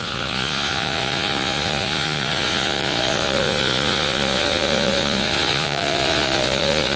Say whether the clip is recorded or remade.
remade